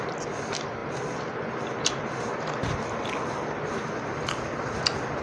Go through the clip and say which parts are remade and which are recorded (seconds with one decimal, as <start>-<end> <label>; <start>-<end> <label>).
0.0-5.2 recorded